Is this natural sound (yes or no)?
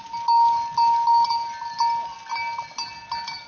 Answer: yes